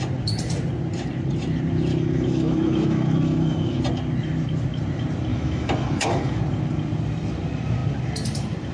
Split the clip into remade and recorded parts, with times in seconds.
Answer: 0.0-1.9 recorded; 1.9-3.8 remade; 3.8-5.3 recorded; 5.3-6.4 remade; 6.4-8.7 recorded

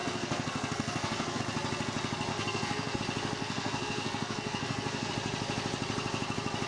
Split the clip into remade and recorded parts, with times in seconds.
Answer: 0.0-1.4 remade; 1.4-2.3 recorded; 2.3-3.0 remade; 3.0-3.4 recorded; 3.4-5.1 remade; 5.1-6.7 recorded

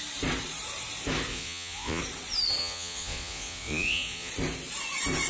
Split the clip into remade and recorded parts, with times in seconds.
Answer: 0.0-1.3 recorded; 1.3-2.0 remade; 2.0-2.6 recorded; 2.6-4.3 remade; 4.3-5.3 recorded

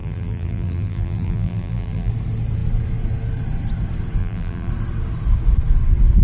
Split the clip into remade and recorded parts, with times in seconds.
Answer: 0.0-2.1 remade; 2.1-4.2 recorded; 4.2-4.7 remade; 4.7-6.2 recorded

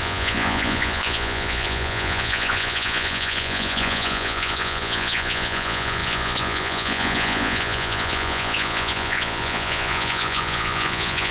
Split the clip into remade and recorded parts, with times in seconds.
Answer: 0.0-11.3 remade